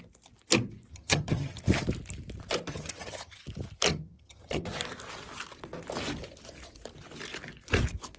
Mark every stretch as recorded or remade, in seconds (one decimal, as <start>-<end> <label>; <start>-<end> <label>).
0.0-0.9 recorded; 0.9-1.6 remade; 1.6-2.7 recorded; 2.7-3.4 remade; 3.4-3.9 recorded; 3.9-4.6 remade; 4.6-8.2 recorded